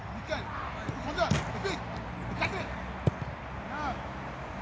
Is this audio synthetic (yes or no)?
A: no